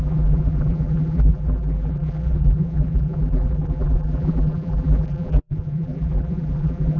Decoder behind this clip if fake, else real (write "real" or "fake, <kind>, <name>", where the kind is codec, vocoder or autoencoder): fake, vocoder, BigVGAN v2